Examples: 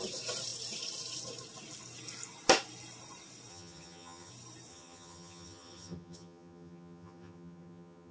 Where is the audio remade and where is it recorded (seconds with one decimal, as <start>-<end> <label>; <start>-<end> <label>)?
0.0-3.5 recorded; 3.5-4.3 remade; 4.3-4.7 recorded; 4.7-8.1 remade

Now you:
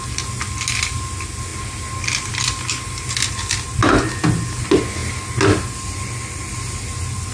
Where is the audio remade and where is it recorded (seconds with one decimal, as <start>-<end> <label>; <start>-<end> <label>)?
0.0-7.3 recorded

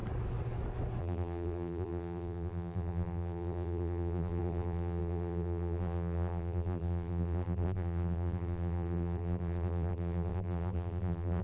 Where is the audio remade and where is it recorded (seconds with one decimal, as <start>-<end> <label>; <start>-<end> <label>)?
0.0-1.0 recorded; 1.0-11.4 remade